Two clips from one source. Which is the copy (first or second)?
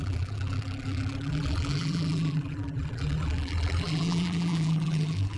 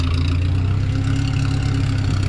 first